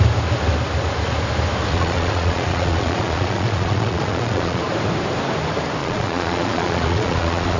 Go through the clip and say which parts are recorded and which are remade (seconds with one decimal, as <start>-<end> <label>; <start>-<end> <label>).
0.0-1.7 recorded; 1.7-4.6 remade; 4.6-5.8 recorded; 5.8-7.6 remade